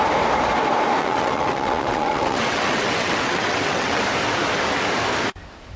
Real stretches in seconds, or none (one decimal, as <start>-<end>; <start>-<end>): 0.0-1.0; 4.0-5.8